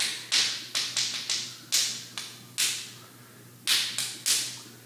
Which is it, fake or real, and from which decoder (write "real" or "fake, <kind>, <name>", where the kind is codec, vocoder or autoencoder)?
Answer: real